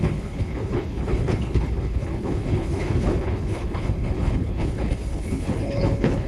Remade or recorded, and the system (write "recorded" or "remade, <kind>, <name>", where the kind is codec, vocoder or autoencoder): remade, codec, HILCodec